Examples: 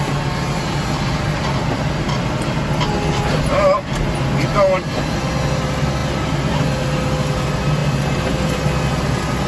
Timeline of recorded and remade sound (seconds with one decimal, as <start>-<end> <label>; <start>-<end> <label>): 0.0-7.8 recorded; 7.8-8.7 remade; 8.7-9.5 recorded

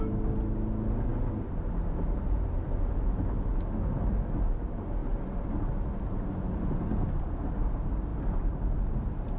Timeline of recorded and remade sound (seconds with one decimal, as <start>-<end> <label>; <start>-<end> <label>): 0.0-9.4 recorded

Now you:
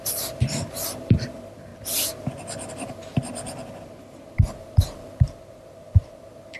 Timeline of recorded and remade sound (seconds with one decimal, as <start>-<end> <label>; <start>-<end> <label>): 0.0-1.7 remade; 1.7-2.7 recorded; 2.7-3.1 remade; 3.1-4.3 recorded; 4.3-6.6 remade

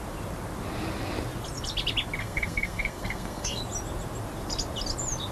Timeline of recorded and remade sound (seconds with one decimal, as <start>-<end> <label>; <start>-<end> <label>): 0.0-2.2 recorded; 2.2-3.6 remade; 3.6-5.3 recorded

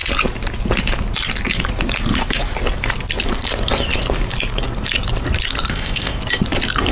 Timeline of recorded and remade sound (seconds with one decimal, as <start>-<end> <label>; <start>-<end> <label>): 0.0-5.7 recorded; 5.7-6.2 remade; 6.2-6.9 recorded

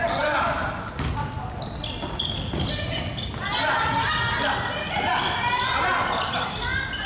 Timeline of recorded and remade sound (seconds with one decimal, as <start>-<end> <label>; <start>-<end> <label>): 0.0-2.5 remade; 2.5-7.1 recorded

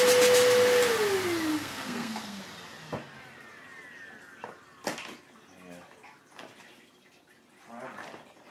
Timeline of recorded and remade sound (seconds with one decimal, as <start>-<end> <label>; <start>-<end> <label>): 0.0-1.5 recorded; 1.5-2.4 remade; 2.4-8.5 recorded